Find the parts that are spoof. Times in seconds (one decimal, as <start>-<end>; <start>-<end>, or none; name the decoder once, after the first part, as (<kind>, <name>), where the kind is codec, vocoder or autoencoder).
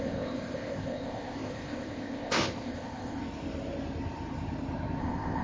0.0-3.2 (codec, ZipCodec); 5.0-5.4